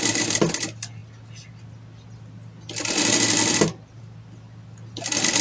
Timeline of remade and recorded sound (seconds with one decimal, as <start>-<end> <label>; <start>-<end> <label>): 0.0-5.4 recorded

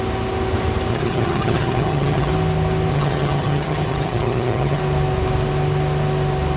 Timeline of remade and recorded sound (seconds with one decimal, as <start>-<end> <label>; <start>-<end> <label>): 0.0-0.9 recorded; 0.9-2.3 remade; 2.3-2.9 recorded; 2.9-4.8 remade; 4.8-6.6 recorded